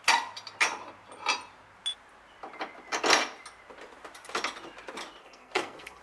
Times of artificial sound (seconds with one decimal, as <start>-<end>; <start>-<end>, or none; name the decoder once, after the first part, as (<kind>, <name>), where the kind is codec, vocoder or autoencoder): 5.2-6.0 (codec, SNAC)